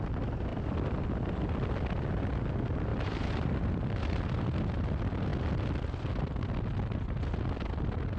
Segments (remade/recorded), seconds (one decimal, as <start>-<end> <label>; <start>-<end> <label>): 0.0-0.5 recorded; 0.5-2.5 remade; 2.5-2.9 recorded; 2.9-4.4 remade; 4.4-8.2 recorded